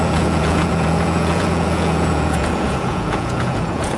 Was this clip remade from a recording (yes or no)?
yes